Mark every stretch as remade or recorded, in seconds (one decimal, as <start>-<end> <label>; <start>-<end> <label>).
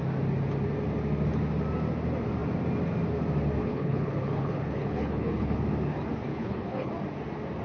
0.0-3.6 recorded; 3.6-5.6 remade; 5.6-6.3 recorded; 6.3-6.9 remade; 6.9-7.6 recorded